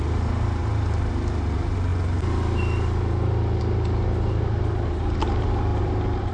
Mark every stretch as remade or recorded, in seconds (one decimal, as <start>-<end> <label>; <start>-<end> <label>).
0.0-6.3 recorded